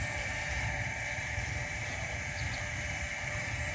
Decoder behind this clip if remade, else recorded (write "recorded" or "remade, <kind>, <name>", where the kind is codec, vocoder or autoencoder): remade, vocoder, BigVGAN v2